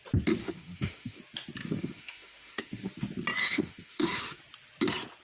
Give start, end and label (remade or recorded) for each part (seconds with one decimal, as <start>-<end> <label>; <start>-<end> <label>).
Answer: 0.0-0.4 recorded; 0.4-1.2 remade; 1.2-1.6 recorded; 1.6-2.9 remade; 2.9-3.4 recorded; 3.4-4.4 remade; 4.4-5.2 recorded